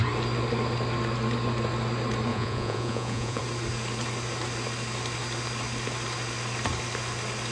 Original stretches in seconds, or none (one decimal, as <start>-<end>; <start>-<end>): 0.0-2.3; 3.4-7.5